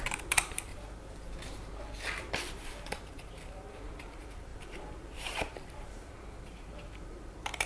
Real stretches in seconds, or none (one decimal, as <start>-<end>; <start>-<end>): 0.7-2.2